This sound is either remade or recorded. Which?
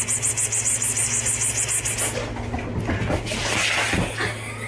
recorded